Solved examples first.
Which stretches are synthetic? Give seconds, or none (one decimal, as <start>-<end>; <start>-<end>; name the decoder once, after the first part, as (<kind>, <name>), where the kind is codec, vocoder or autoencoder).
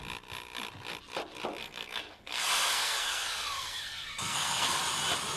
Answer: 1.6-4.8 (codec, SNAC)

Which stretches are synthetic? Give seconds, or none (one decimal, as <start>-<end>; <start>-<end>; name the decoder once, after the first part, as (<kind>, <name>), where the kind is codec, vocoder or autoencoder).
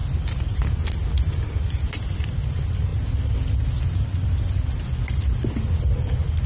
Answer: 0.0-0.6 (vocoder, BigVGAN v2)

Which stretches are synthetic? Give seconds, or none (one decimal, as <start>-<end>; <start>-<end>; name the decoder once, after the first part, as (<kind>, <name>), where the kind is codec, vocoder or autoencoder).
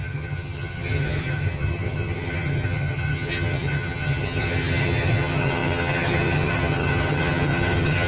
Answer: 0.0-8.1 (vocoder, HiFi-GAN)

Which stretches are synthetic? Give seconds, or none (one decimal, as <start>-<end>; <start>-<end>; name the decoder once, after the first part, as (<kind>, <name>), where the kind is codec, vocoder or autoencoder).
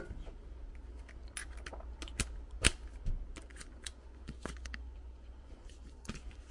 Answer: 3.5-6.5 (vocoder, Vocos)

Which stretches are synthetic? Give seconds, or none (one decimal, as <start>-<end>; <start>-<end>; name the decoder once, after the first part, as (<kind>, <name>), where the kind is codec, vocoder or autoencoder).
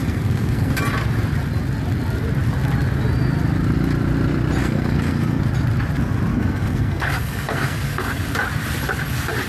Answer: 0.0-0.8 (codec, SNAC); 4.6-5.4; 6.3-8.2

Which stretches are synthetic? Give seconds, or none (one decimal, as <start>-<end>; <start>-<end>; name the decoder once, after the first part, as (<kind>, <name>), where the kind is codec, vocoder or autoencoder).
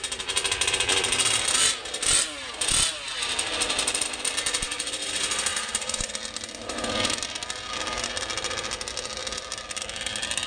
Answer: 5.5-6.1 (vocoder, BigVGAN v2)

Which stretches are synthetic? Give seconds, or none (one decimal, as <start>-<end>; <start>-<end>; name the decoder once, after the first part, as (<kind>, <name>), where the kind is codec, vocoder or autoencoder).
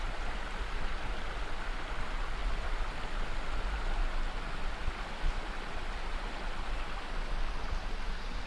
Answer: 4.8-7.8 (vocoder, BigVGAN v2)